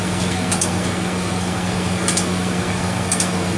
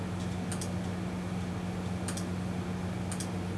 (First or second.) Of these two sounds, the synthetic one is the first